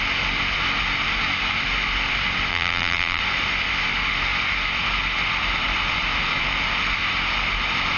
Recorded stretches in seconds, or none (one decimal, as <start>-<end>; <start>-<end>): 0.0-2.5; 3.2-8.0